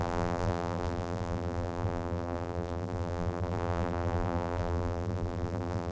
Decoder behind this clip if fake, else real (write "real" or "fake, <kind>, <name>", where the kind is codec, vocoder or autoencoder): fake, vocoder, BigVGAN v2